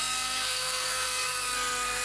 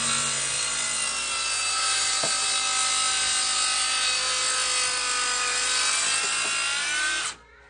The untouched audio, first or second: second